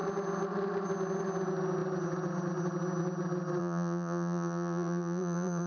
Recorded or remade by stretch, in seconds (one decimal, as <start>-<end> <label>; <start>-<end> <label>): 0.0-3.6 recorded; 3.6-5.7 remade